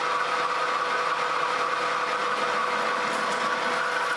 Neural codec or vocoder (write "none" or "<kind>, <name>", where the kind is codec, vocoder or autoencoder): none